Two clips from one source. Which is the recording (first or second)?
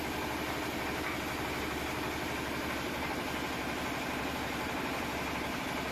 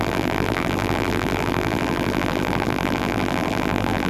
first